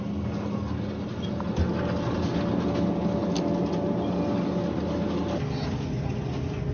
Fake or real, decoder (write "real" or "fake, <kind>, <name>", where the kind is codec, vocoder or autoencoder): real